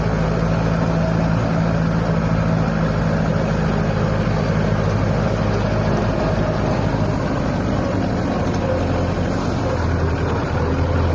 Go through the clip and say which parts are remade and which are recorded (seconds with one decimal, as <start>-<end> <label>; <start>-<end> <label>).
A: 0.0-11.1 recorded

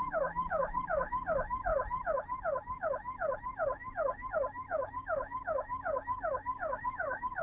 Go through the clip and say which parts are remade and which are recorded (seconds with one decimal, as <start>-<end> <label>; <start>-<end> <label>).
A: 0.0-1.7 remade; 1.7-4.3 recorded; 4.3-7.4 remade

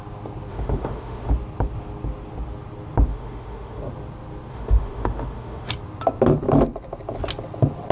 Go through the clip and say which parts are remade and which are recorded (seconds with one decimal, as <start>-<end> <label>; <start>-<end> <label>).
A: 0.0-0.5 recorded; 0.5-1.3 remade; 1.3-3.1 recorded; 3.1-3.8 remade; 3.8-4.5 recorded; 4.5-5.7 remade; 5.7-7.9 recorded

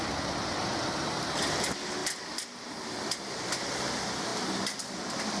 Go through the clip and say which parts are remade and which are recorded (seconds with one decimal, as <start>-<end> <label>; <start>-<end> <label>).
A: 0.0-5.4 recorded